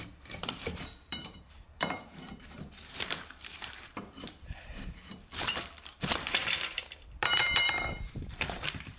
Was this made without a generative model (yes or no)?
no